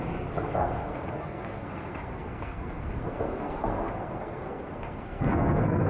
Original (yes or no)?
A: no